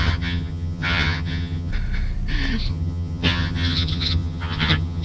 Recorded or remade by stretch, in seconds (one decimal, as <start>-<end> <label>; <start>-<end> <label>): 0.0-1.7 remade; 1.7-2.7 recorded; 2.7-5.0 remade